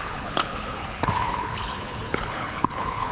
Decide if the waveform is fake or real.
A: fake